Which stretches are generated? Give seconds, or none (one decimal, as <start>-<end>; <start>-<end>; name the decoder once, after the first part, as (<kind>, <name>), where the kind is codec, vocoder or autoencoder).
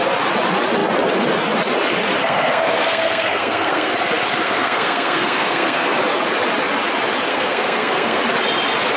2.2-3.9 (codec, SNAC); 4.4-6.0; 7.3-8.2